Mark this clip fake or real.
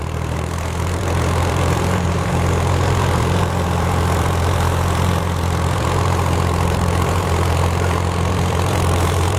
fake